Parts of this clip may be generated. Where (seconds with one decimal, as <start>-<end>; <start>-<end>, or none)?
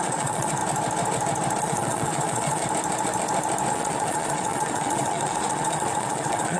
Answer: 0.0-0.6; 1.6-2.6; 3.7-6.6